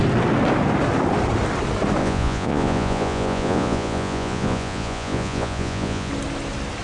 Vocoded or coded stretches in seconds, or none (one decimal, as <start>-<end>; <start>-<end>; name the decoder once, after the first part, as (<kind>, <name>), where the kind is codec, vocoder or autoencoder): 2.0-6.1 (vocoder, Vocos)